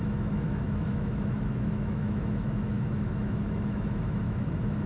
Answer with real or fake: fake